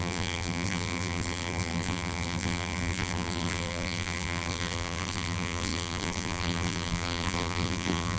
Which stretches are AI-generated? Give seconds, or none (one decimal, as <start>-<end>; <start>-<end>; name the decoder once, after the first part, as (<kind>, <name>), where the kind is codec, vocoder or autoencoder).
0.0-8.2 (vocoder, BigVGAN v2)